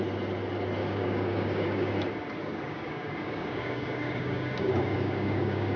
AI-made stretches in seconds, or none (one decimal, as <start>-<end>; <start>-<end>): 0.8-1.9; 2.4-5.8